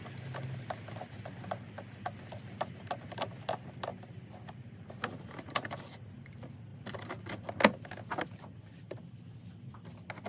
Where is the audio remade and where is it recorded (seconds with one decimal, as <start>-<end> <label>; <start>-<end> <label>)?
0.0-10.3 recorded